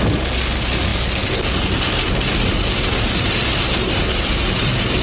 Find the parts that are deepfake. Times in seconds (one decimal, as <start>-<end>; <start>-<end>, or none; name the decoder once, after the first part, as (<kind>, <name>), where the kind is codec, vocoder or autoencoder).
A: none

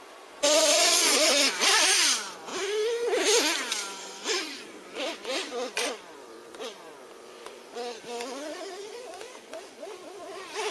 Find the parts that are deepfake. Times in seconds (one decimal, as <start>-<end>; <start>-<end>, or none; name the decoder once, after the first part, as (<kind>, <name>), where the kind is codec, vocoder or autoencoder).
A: 0.0-2.5 (vocoder, Vocos); 4.0-10.7